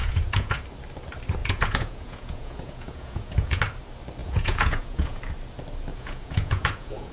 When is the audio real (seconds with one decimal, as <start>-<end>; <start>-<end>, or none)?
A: 0.6-1.4; 3.6-4.2; 5.2-5.9